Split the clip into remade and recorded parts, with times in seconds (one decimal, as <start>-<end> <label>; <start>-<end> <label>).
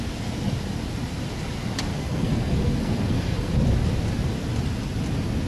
0.0-1.9 recorded; 1.9-3.5 remade; 3.5-5.5 recorded